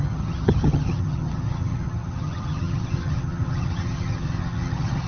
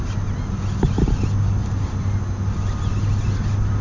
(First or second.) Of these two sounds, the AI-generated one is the first